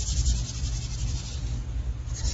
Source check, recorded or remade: remade